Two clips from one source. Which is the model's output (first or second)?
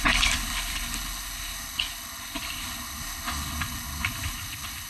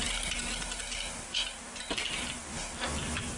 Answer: first